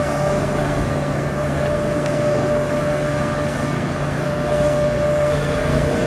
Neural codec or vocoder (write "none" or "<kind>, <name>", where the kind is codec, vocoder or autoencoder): codec, SNAC